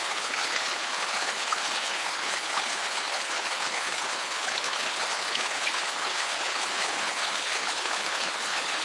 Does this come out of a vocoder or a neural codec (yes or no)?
yes